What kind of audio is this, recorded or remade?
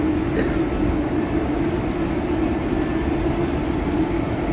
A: recorded